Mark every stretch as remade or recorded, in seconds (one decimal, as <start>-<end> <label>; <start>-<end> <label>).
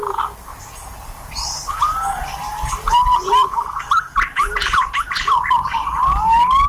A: 0.0-0.5 recorded; 0.5-1.7 remade; 1.7-2.4 recorded; 2.4-5.0 remade; 5.0-6.7 recorded